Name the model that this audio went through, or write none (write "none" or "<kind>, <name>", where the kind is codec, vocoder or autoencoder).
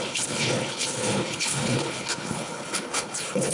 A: codec, HILCodec